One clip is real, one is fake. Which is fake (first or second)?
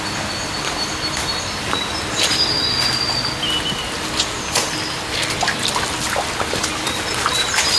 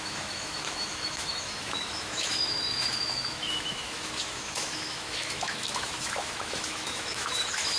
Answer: second